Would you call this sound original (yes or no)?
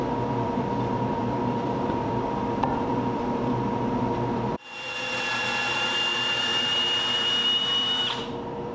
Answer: no